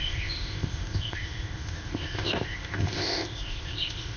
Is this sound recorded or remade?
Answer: remade